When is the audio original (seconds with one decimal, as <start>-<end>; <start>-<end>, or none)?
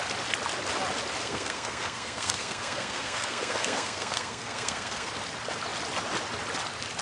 0.0-1.2; 5.1-7.0